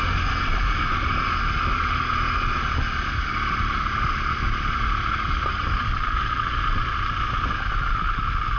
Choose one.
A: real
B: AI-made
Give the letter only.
A